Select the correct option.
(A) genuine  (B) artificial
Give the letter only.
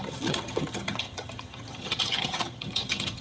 B